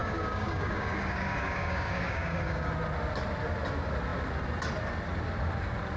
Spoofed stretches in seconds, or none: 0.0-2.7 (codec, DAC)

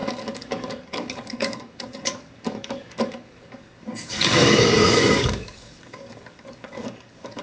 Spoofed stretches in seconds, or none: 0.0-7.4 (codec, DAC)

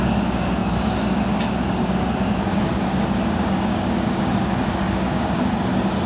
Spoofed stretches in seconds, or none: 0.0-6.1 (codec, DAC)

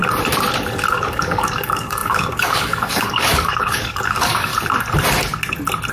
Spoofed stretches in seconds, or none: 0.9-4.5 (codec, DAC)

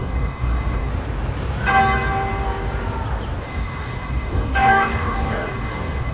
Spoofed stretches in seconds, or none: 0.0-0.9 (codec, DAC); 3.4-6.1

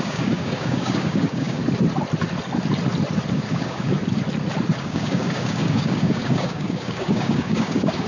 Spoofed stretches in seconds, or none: 0.0-1.6 (codec, DAC); 3.3-4.0; 4.8-8.1

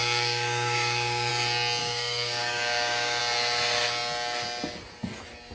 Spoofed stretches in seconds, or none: 0.0-1.3 (codec, DAC); 1.8-3.2